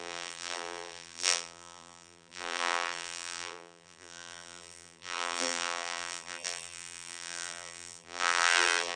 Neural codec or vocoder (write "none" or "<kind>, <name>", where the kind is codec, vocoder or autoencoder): vocoder, BigVGAN v2